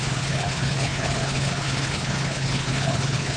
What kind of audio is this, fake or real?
fake